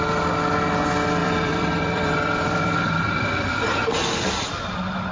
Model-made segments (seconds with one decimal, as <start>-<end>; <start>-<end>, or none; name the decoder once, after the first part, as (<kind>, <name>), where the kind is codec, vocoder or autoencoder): 1.2-3.5 (vocoder, BigVGAN v2)